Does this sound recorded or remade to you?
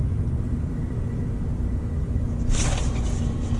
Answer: recorded